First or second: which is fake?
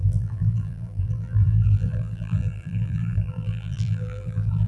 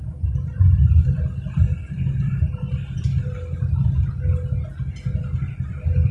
first